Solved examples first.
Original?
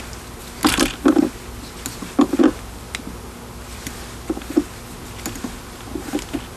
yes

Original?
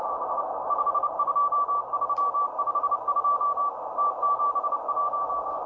no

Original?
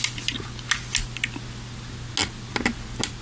yes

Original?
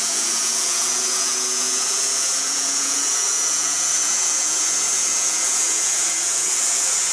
no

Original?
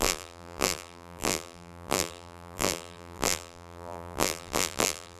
no